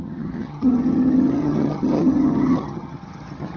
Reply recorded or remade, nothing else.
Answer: remade